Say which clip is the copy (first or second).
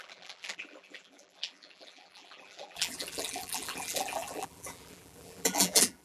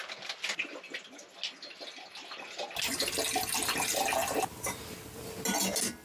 first